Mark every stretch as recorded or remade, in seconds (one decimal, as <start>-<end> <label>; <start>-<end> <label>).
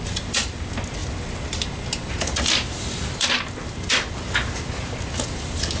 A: 0.0-5.8 recorded